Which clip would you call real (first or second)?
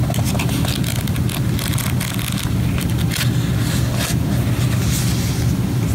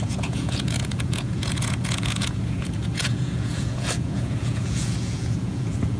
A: first